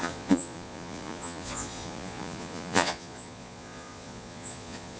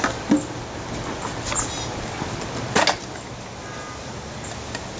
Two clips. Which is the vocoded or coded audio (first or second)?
first